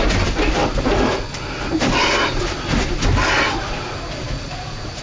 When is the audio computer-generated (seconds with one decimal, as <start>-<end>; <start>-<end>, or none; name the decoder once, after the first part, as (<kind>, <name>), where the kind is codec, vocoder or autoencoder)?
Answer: 4.2-5.0 (vocoder, Vocos)